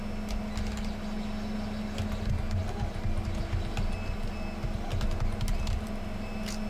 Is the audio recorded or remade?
recorded